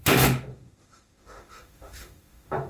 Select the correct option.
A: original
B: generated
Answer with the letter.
B